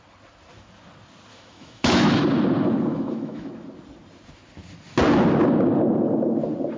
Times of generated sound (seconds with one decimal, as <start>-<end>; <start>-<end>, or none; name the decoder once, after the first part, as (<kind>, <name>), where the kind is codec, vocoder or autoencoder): 1.3-2.2 (autoencoder, DAC-VAE); 2.9-3.5